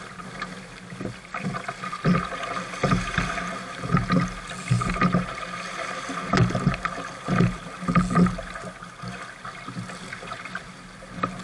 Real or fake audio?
real